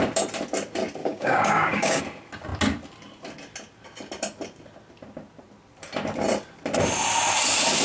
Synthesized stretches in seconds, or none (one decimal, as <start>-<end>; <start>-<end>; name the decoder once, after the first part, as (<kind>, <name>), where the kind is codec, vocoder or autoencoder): 1.0-2.0 (codec, DAC)